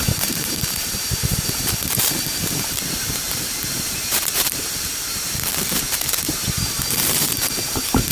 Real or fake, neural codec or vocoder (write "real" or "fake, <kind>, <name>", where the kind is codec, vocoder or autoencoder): fake, vocoder, BigVGAN v2